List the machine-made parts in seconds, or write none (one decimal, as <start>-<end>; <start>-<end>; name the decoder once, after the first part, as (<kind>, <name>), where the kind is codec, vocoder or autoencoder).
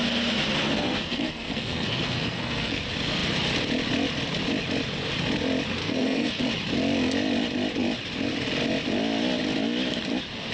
0.6-2.8 (codec, SNAC); 5.8-6.4